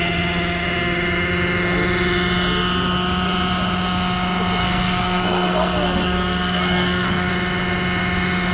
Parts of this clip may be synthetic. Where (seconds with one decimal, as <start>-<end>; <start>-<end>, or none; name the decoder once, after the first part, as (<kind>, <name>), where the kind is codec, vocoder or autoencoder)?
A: 4.6-7.3 (codec, SNAC)